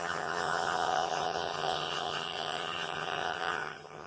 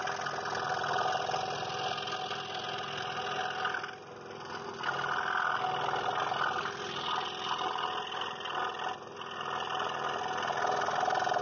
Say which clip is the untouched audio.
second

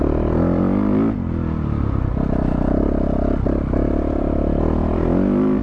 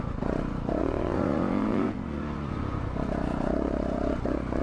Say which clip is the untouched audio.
first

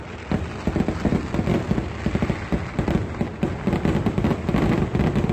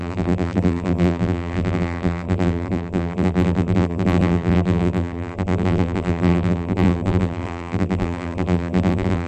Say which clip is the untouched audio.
first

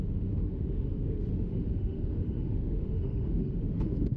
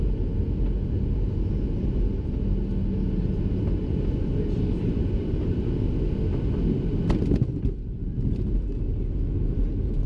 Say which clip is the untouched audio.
second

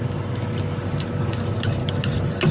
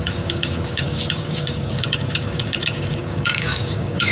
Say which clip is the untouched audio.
first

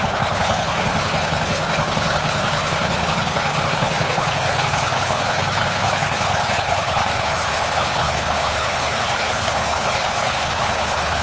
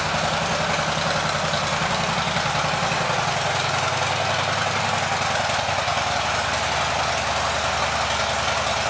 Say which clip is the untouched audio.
second